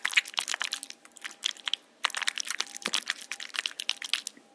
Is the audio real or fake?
real